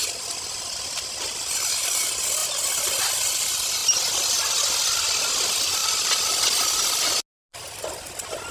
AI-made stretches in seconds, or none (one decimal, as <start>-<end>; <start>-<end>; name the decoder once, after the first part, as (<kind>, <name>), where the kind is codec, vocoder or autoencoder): none